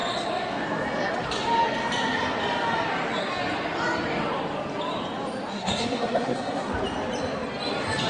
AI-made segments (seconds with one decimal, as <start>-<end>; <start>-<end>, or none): 5.5-6.7